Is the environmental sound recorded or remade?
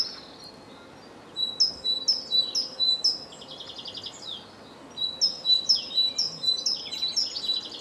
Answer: recorded